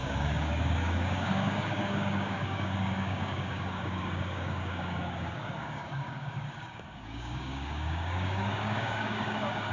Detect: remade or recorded remade